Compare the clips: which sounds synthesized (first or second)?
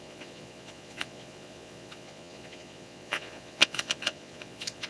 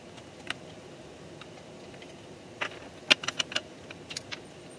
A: first